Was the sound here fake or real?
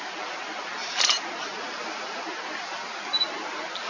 real